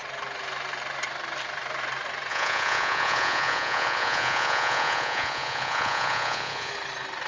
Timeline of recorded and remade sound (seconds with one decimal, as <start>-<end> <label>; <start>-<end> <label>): 0.0-2.3 recorded; 2.3-6.7 remade; 6.7-7.3 recorded